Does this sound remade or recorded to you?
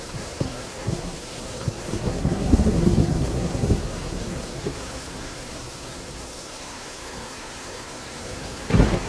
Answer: remade